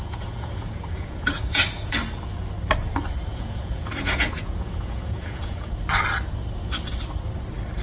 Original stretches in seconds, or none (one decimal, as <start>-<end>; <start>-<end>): 2.0-3.3; 5.7-7.8